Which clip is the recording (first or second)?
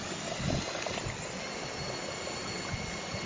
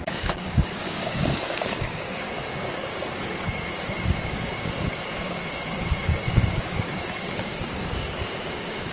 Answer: first